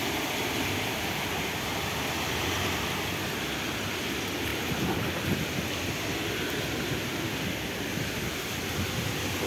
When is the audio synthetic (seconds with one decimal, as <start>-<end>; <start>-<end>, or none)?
4.5-5.1